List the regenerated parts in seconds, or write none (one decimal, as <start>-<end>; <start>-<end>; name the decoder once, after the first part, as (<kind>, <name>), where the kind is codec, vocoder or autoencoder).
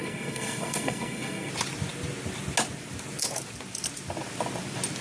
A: 0.0-1.5 (codec, SNAC)